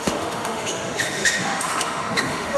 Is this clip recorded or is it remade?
remade